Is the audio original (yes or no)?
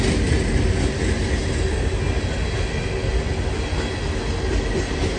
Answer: yes